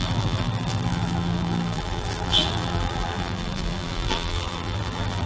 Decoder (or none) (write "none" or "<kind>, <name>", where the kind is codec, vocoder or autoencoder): vocoder, BigVGAN v2